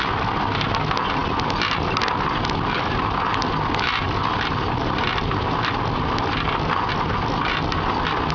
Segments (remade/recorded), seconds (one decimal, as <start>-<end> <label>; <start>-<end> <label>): 0.0-8.3 recorded